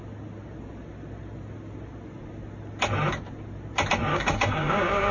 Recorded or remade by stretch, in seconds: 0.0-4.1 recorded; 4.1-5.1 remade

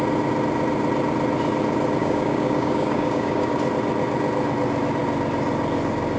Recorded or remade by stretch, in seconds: 0.0-2.0 recorded; 2.0-3.6 remade; 3.6-6.2 recorded

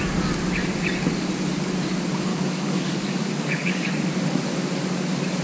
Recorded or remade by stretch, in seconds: 0.0-2.3 recorded; 2.3-4.0 remade; 4.0-5.4 recorded

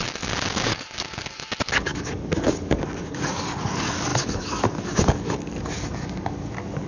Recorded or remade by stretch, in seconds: 0.0-6.9 remade